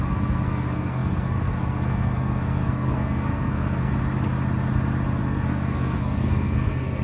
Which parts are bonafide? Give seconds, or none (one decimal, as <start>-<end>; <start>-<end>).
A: 3.9-5.2